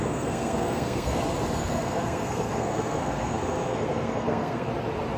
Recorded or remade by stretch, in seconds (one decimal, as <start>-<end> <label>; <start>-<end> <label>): 0.0-1.2 remade; 1.2-1.6 recorded; 1.6-4.7 remade; 4.7-5.2 recorded